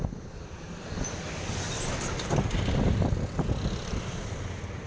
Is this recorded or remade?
recorded